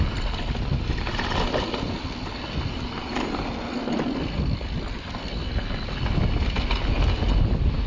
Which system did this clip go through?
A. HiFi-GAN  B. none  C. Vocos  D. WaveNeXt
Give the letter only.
B